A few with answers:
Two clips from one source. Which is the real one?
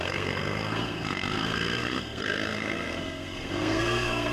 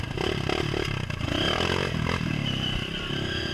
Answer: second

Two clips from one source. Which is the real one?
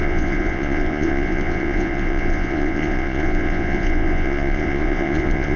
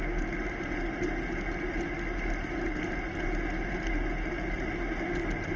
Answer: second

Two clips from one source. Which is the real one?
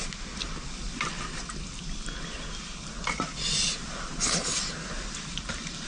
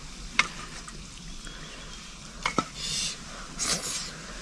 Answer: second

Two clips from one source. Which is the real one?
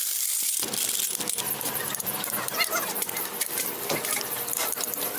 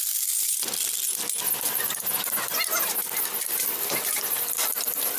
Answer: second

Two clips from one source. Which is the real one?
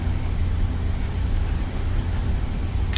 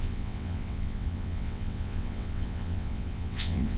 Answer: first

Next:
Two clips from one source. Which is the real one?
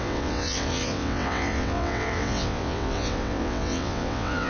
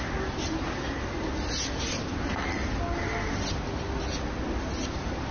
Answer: second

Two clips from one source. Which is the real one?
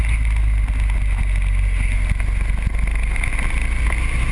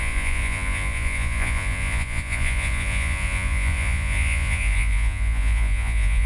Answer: first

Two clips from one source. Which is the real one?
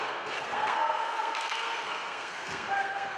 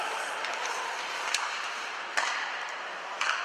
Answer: second